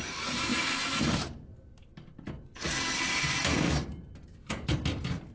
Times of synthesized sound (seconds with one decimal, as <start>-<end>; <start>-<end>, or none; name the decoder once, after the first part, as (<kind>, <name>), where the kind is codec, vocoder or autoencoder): none